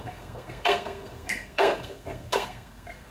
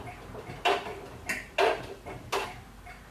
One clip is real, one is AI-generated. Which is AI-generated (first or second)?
first